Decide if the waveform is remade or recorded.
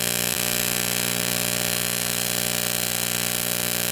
recorded